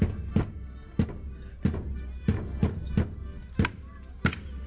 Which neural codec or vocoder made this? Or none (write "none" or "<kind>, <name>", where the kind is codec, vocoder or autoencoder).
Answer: none